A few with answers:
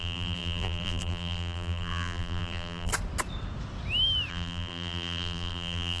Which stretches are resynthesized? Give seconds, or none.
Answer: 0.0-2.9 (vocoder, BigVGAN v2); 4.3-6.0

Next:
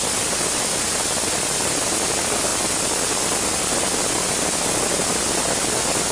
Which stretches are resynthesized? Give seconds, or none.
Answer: none